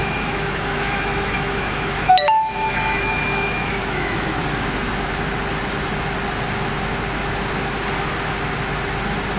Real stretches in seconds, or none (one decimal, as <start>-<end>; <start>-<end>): 4.4-9.4